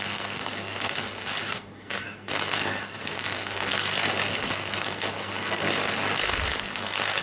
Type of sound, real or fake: fake